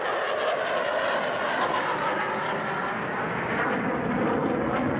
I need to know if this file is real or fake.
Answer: real